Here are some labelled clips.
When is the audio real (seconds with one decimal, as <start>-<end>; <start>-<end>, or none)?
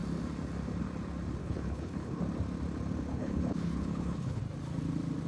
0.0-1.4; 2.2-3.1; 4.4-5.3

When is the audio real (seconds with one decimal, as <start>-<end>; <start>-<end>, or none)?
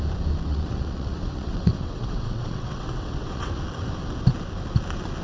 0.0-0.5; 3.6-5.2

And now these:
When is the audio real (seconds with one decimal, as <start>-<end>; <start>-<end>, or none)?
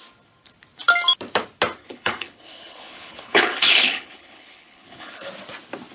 0.0-1.8; 5.3-5.9